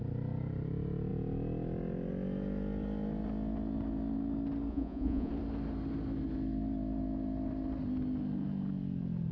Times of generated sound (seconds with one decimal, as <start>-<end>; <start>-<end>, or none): 4.7-5.3